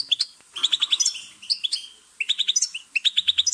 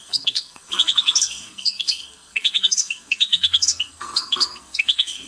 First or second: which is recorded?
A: first